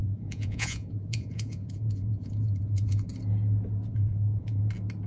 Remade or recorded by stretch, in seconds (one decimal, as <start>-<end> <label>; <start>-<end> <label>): 0.0-3.1 remade; 3.1-3.9 recorded; 3.9-4.6 remade; 4.6-5.1 recorded